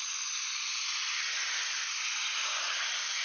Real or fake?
real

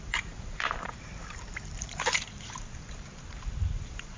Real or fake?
fake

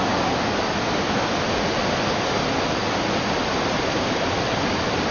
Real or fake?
real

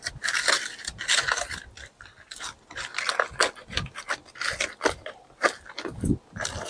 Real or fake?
real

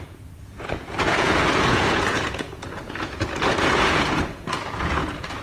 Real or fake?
fake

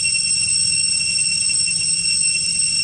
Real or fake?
real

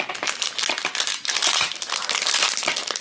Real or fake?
real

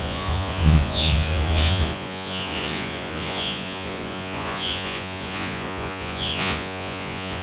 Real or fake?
fake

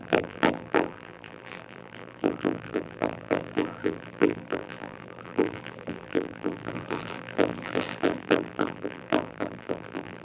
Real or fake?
fake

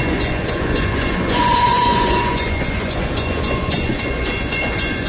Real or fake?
fake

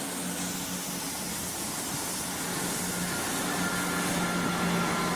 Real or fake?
real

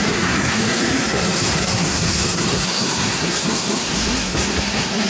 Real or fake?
fake